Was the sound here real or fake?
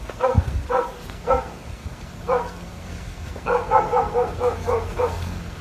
fake